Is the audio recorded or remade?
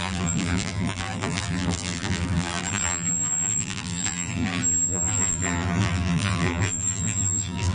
remade